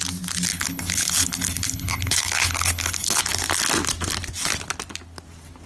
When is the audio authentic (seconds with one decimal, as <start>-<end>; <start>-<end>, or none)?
0.0-0.5; 3.2-5.7